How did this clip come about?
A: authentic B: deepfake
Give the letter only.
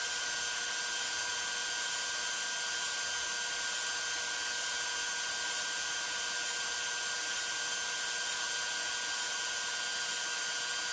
A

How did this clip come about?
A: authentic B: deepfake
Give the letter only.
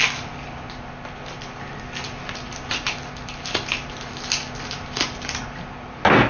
A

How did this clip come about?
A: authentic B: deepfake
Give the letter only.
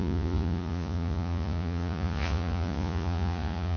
B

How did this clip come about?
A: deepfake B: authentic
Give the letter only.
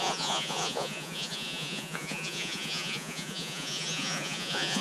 A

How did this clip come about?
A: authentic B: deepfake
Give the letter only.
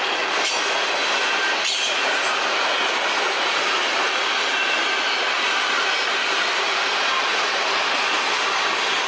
A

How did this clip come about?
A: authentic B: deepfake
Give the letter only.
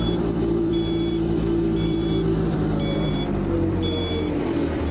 B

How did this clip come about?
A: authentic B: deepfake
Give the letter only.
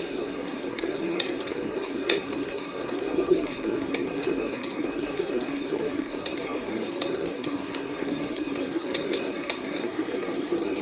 B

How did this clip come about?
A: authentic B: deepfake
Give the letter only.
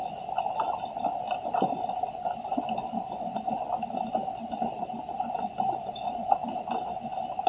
A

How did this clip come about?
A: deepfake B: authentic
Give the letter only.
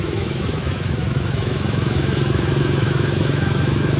A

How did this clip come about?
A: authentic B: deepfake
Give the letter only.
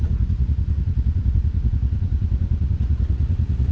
B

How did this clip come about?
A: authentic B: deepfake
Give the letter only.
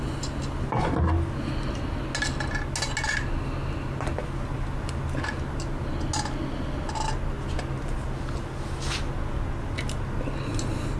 A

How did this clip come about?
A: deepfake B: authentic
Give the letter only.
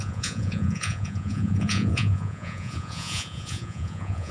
A